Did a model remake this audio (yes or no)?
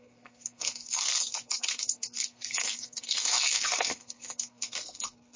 yes